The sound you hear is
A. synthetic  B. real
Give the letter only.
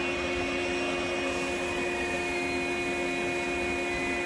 B